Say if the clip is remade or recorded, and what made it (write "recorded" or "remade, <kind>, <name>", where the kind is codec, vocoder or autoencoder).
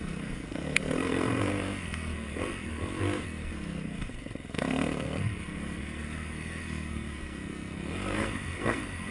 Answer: remade, codec, SNAC